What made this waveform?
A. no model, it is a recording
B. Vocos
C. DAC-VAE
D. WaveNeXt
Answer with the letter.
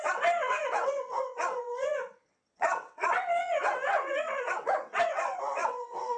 D